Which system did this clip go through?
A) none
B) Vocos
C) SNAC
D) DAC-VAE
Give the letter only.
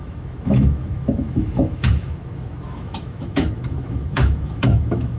D